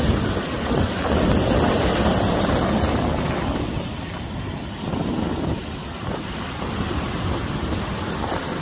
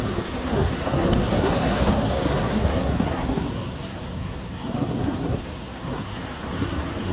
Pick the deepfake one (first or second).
second